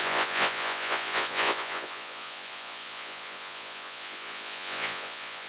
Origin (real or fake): fake